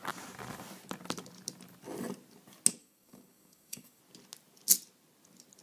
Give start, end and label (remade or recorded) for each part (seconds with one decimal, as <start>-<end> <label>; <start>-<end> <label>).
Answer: 0.0-2.8 recorded; 2.8-4.0 remade; 4.0-5.6 recorded